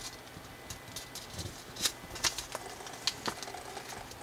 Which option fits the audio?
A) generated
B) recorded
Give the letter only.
B